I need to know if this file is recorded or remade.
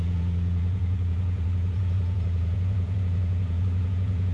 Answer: remade